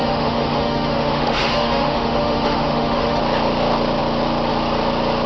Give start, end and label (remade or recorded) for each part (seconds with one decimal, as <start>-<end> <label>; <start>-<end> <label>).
0.0-3.2 remade; 3.2-5.3 recorded